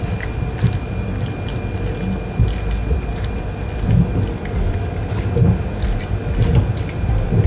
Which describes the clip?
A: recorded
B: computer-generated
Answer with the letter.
A